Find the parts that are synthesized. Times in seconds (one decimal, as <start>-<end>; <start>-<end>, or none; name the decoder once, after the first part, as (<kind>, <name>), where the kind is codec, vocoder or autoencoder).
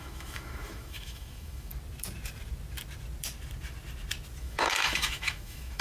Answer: 0.0-1.7 (autoencoder, DAC-VAE); 4.4-5.8